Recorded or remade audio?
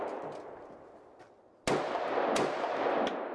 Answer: recorded